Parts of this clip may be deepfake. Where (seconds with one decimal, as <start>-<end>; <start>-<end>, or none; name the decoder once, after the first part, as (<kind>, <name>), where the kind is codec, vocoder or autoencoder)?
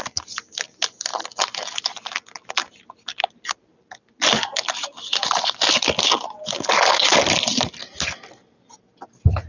none